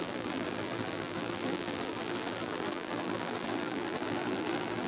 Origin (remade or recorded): remade